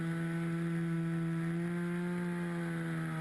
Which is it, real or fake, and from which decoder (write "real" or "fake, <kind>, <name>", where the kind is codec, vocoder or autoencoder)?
real